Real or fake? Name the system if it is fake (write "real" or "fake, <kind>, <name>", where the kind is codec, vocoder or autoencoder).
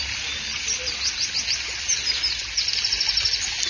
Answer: real